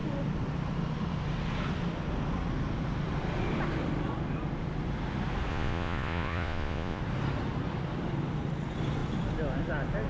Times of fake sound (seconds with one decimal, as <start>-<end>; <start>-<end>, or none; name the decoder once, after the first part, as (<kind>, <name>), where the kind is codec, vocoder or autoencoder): 5.5-7.0 (vocoder, Vocos)